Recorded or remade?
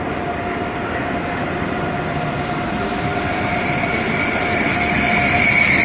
remade